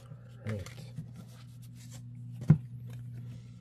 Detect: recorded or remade recorded